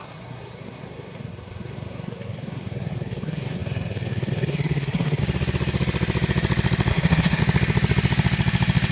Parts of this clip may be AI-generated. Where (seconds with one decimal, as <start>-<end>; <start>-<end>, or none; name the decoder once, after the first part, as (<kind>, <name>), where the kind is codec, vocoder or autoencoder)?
0.0-5.2 (codec, SNAC); 6.9-7.4